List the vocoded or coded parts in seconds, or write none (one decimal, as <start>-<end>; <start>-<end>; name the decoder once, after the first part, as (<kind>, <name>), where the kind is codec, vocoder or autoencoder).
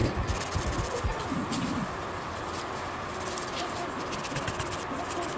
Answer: 1.1-4.2 (vocoder, BigVGAN v2)